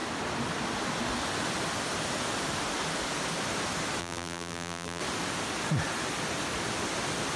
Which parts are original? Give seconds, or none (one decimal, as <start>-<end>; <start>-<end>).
0.0-4.0; 5.0-7.4